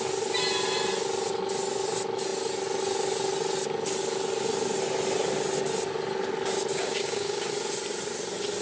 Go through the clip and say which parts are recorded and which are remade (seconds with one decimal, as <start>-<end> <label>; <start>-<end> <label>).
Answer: 0.0-6.7 recorded; 6.7-7.5 remade; 7.5-8.6 recorded